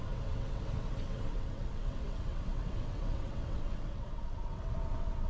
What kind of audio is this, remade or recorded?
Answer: remade